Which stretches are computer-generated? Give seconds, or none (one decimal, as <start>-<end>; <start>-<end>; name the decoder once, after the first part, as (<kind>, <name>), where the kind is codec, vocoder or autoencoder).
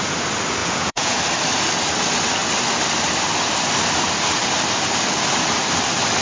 0.6-1.2 (vocoder, Vocos)